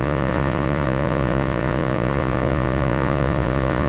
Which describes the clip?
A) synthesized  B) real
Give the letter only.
A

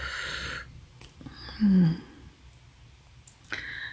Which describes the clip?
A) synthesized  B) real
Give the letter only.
B